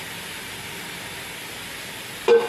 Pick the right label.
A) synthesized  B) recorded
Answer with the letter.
B